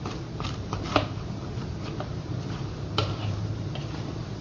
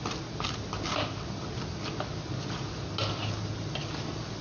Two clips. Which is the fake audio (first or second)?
first